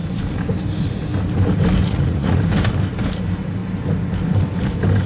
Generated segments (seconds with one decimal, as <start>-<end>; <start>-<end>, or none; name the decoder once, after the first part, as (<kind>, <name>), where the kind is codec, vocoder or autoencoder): 1.8-2.4 (vocoder, Vocos)